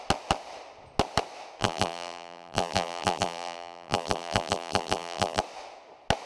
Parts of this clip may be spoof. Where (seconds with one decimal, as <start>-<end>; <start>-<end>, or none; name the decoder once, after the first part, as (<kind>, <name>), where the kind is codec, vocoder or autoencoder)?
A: 1.6-5.4 (vocoder, BigVGAN v2)